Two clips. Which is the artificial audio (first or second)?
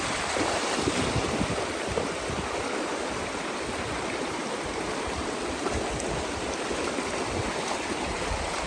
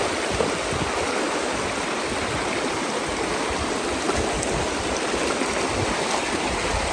first